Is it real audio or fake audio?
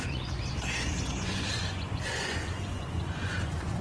fake